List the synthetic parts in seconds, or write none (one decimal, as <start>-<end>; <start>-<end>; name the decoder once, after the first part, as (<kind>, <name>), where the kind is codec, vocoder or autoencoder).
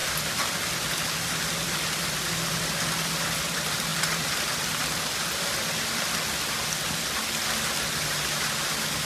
none